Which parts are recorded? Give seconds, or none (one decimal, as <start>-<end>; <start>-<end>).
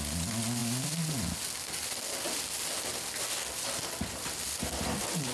0.0-5.3